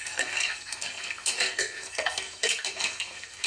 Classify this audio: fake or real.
fake